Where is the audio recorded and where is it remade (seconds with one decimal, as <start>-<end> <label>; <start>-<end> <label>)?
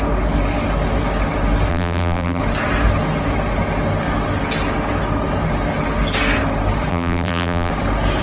0.0-1.7 recorded; 1.7-2.4 remade; 2.4-6.9 recorded; 6.9-7.7 remade; 7.7-8.2 recorded